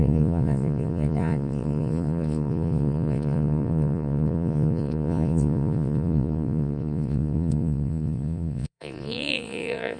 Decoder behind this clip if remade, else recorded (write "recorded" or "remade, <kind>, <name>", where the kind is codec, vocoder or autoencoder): remade, vocoder, Vocos